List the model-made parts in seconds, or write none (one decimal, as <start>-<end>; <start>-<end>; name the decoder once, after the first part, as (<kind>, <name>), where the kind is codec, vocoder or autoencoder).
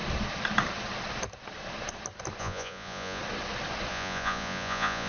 2.4-3.2 (vocoder, Vocos); 3.9-5.1